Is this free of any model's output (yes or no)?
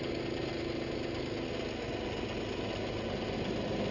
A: yes